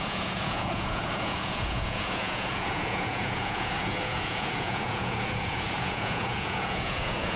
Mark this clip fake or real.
fake